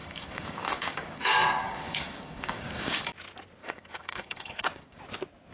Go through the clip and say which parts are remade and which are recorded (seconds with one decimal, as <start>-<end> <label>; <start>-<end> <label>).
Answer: 0.0-3.1 remade; 3.1-3.6 recorded; 3.6-5.0 remade; 5.0-5.5 recorded